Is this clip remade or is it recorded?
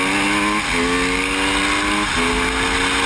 recorded